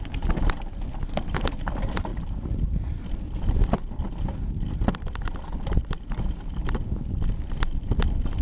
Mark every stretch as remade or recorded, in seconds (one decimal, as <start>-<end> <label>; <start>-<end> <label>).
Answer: 0.0-8.4 recorded